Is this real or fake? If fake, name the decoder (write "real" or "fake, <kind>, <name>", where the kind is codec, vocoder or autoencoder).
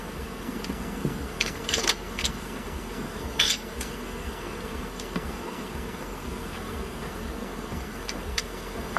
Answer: fake, codec, SNAC